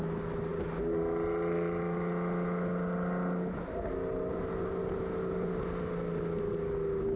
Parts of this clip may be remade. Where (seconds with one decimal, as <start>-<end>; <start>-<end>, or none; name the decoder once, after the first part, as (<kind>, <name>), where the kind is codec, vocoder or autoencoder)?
none